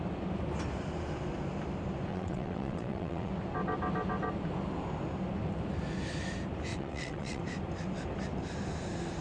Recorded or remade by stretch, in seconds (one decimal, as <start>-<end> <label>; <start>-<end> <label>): 0.0-2.1 recorded; 2.1-3.3 remade; 3.3-6.7 recorded; 6.7-7.4 remade; 7.4-9.2 recorded